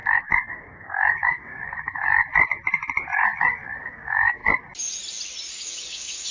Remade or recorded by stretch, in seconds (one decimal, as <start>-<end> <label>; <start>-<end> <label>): 0.0-2.0 remade; 2.0-3.8 recorded; 3.8-4.4 remade; 4.4-5.5 recorded; 5.5-6.3 remade